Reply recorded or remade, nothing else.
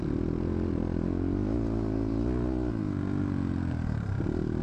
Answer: recorded